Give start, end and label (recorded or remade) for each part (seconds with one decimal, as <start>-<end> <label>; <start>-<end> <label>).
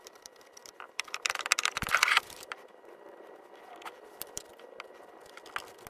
0.0-4.5 remade; 4.5-5.9 recorded